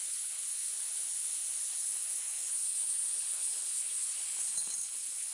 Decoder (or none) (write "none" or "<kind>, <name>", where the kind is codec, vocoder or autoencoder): codec, HILCodec